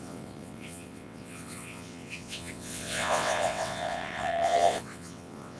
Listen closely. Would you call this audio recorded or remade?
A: remade